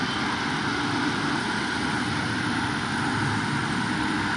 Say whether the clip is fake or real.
real